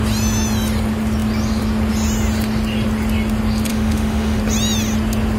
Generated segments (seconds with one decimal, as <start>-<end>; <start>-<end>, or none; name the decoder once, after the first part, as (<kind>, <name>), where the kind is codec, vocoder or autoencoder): 3.7-4.4 (autoencoder, DAC-VAE)